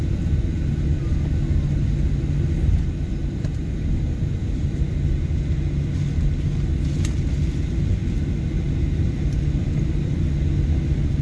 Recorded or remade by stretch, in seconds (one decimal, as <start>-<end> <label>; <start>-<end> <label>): 0.0-11.2 recorded